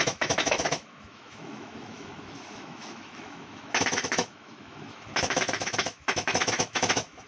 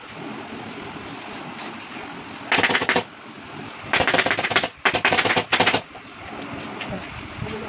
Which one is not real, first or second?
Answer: first